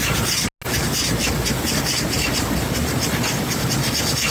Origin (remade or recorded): recorded